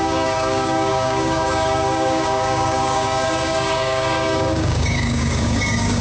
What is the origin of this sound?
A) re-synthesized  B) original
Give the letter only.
A